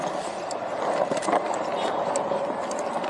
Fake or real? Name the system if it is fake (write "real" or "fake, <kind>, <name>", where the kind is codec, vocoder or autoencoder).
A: real